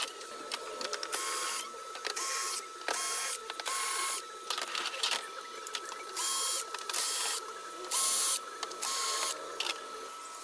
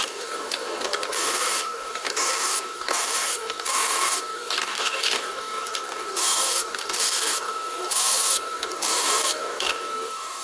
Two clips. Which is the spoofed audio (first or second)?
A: second